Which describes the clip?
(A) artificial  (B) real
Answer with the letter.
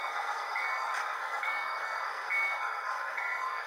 A